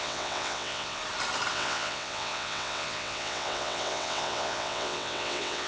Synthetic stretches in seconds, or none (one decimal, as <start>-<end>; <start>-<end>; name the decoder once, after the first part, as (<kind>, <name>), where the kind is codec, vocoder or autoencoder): 0.0-1.0 (vocoder, WaveNeXt); 1.5-5.7